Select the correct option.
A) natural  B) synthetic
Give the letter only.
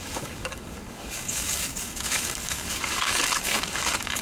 B